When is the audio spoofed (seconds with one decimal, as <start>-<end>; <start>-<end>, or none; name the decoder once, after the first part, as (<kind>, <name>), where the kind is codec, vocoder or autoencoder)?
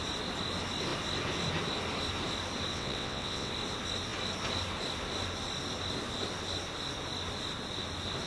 2.7-3.5 (vocoder, WaveNeXt)